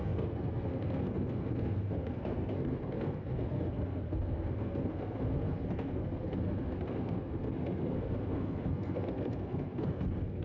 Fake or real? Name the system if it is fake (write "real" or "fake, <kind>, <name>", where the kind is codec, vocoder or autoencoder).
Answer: fake, codec, SNAC